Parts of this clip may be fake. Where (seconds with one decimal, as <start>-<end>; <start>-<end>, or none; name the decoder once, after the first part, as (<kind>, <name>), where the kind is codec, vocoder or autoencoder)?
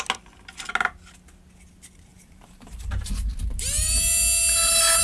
2.1-3.1 (vocoder, BigVGAN v2)